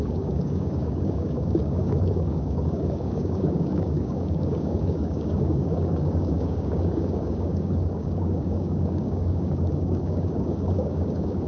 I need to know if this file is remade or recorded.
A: remade